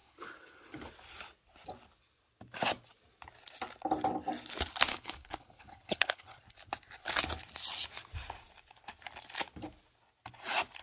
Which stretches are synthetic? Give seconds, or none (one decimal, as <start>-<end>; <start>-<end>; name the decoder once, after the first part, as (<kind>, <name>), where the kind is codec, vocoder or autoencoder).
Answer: 0.0-0.9 (codec, HILCodec); 4.9-6.4